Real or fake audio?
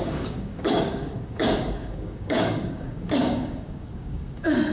fake